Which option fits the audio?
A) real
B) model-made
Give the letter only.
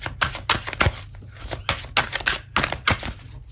A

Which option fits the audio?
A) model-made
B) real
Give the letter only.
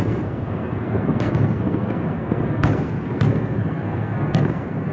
A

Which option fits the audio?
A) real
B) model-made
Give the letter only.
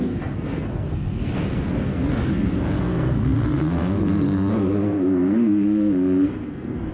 B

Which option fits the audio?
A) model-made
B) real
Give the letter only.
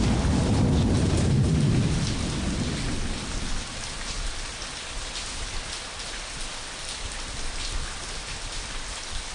B